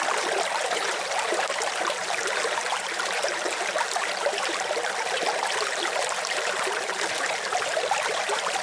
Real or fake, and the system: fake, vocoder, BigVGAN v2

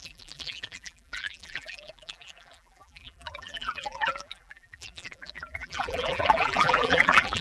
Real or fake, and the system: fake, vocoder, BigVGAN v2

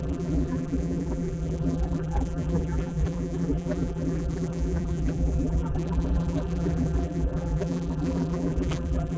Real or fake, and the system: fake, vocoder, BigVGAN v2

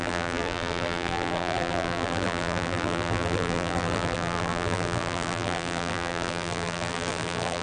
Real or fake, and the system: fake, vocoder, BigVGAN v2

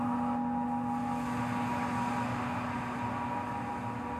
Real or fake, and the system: real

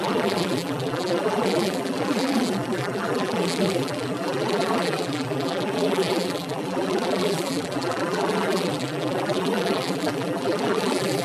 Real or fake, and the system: fake, vocoder, BigVGAN v2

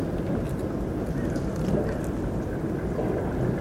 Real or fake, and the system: real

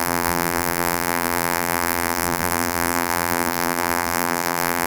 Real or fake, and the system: fake, vocoder, BigVGAN v2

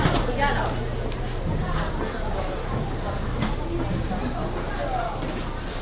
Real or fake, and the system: real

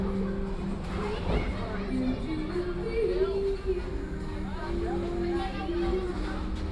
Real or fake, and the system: real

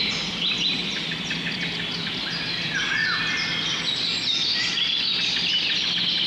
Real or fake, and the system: real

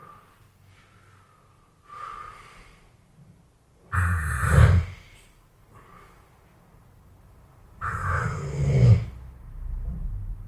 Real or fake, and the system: real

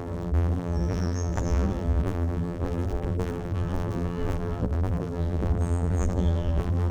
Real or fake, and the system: fake, vocoder, BigVGAN v2